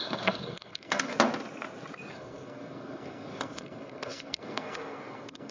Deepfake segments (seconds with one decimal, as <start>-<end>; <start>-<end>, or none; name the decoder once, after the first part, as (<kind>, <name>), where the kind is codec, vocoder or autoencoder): 0.0-1.1 (codec, SNAC); 2.1-5.5